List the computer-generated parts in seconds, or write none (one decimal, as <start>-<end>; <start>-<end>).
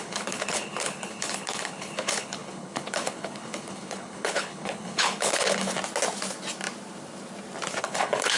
0.0-5.7; 7.8-8.4